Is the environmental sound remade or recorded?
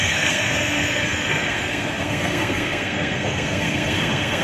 remade